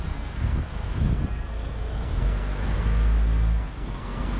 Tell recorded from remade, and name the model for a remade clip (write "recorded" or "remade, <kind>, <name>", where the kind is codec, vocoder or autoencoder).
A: remade, codec, SNAC